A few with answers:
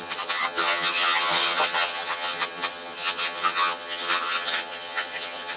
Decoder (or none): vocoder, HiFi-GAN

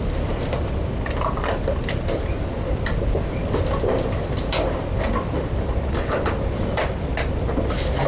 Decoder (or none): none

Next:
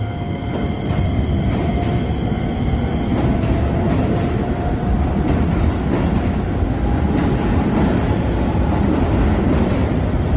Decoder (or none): none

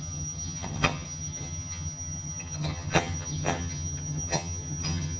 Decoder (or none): vocoder, HiFi-GAN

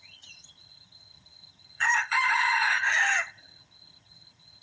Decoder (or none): vocoder, HiFi-GAN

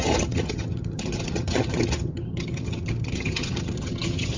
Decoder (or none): vocoder, HiFi-GAN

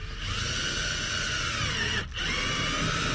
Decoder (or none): none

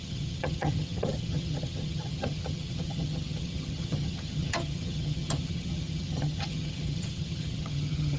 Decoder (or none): vocoder, HiFi-GAN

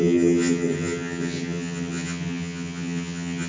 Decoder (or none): vocoder, HiFi-GAN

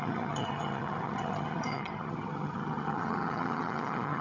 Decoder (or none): vocoder, HiFi-GAN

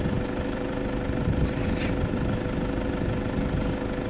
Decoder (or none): none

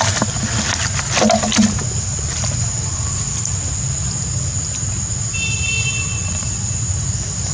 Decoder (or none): none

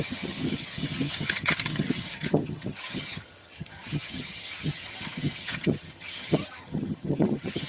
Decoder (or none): vocoder, HiFi-GAN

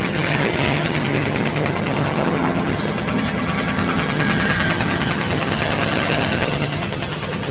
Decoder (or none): vocoder, HiFi-GAN